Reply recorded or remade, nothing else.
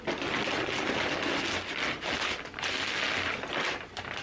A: recorded